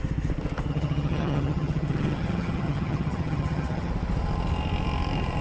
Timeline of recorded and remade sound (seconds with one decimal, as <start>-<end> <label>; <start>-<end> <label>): 0.0-0.7 recorded; 0.7-3.9 remade; 3.9-5.4 recorded